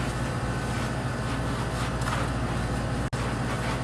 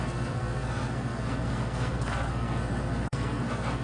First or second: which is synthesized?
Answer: second